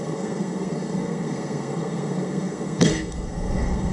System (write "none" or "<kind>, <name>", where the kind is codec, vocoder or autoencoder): codec, SNAC